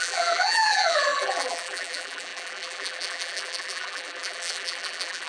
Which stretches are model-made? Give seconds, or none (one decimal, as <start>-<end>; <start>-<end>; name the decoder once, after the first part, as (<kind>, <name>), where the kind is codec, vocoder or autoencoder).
0.0-5.3 (vocoder, BigVGAN v2)